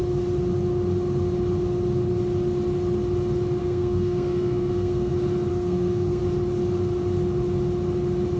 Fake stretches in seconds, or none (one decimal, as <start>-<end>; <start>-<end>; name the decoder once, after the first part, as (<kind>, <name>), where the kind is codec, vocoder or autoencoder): 3.6-5.1 (codec, SNAC); 5.5-6.2